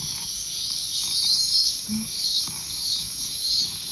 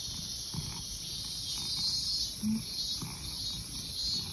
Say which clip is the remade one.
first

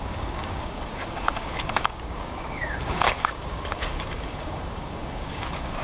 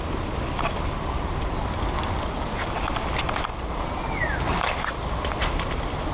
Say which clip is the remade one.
first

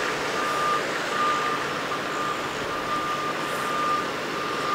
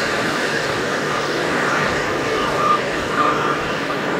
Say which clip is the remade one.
second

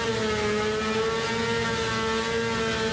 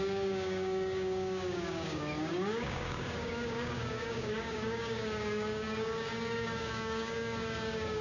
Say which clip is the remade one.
second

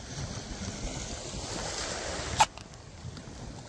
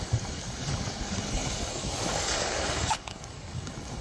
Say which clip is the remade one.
second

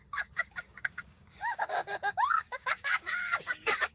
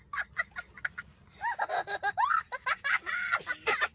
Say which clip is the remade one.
first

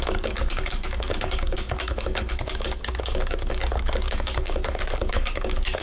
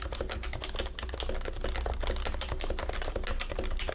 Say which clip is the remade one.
first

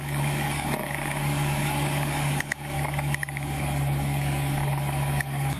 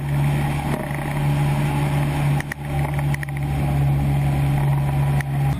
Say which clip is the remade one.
first